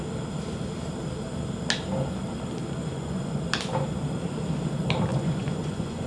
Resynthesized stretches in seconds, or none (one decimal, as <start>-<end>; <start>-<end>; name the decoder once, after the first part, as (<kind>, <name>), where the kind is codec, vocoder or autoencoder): 2.9-3.4 (vocoder, Vocos); 5.1-6.1